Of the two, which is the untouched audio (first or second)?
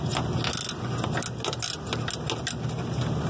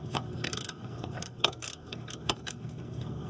first